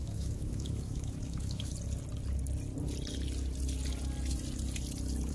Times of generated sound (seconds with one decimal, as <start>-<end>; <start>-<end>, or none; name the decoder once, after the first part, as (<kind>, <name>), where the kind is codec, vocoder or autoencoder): 0.0-1.7 (autoencoder, DAC-VAE)